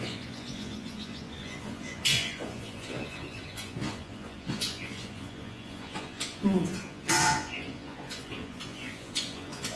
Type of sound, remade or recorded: remade